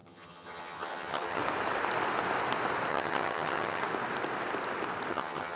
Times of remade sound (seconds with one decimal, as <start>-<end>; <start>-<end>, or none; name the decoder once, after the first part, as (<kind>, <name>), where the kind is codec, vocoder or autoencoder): 0.0-1.4 (vocoder, HiFi-GAN); 2.9-3.8; 5.1-5.6

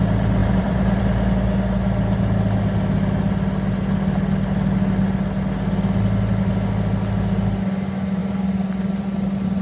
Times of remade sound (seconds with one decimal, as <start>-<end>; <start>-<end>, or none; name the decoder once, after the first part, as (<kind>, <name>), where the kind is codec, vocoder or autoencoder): 0.4-1.0 (vocoder, BigVGAN v2); 8.2-9.6

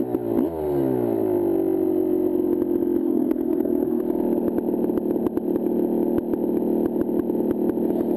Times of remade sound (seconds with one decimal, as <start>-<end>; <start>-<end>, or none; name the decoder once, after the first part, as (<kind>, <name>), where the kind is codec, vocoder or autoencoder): 3.0-4.0 (codec, SNAC)

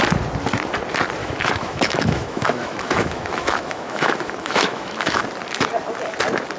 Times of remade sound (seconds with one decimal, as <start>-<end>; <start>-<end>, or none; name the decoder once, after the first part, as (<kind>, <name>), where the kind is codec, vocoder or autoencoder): 1.2-5.2 (autoencoder, DAC-VAE)

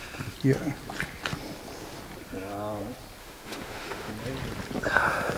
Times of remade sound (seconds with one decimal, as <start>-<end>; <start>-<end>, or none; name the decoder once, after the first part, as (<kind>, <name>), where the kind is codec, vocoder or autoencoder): 3.2-4.1 (autoencoder, DAC-VAE)

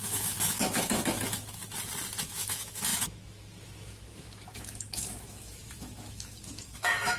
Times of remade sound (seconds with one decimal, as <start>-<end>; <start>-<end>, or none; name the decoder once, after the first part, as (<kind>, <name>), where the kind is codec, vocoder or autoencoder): 0.0-1.6 (autoencoder, DAC-VAE); 2.2-7.2

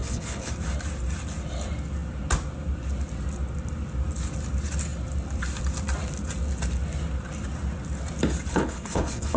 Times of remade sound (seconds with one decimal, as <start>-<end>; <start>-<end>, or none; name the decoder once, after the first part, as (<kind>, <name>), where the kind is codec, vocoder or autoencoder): 0.0-0.5 (codec, HILCodec); 8.5-9.4